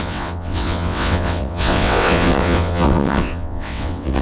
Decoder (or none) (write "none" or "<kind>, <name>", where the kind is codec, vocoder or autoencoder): vocoder, WaveNeXt